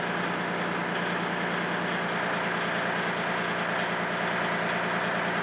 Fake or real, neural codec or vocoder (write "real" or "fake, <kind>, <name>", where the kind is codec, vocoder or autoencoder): real